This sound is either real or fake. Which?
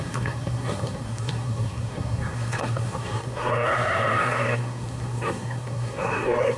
fake